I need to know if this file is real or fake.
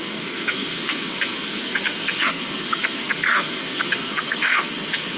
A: fake